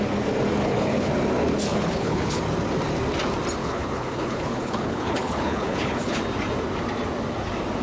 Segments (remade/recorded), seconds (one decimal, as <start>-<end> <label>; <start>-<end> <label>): 0.0-0.6 recorded; 0.6-1.1 remade; 1.1-1.7 recorded; 1.7-2.4 remade; 2.4-3.6 recorded; 3.6-6.2 remade; 6.2-7.8 recorded